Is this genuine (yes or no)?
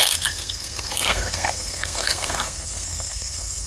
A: no